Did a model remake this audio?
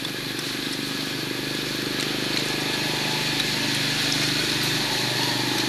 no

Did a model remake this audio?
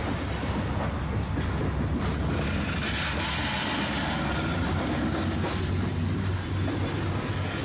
no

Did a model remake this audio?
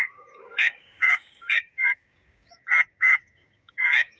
yes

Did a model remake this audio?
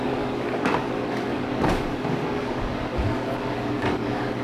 yes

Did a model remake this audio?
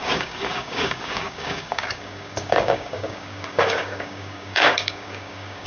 yes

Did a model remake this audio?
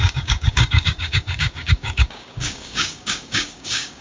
yes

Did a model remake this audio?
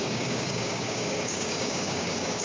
yes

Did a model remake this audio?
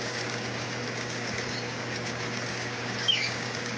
yes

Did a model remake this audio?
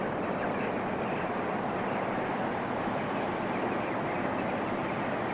no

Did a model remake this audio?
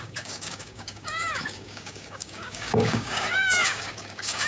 yes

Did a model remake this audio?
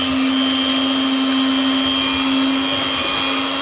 no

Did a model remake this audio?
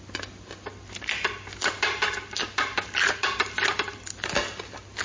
no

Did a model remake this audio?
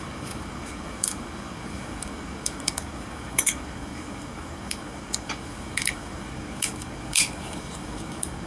yes